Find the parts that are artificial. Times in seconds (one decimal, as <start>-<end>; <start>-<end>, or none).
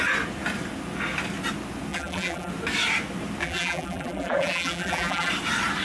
1.9-2.5; 3.4-5.3